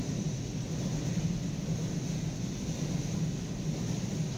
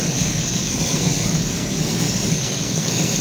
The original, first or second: first